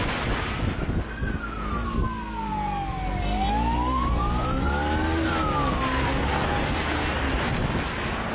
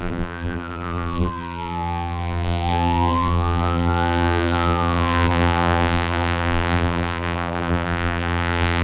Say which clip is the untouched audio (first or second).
first